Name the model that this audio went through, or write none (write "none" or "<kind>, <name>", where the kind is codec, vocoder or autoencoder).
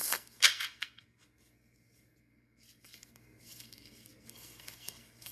codec, SNAC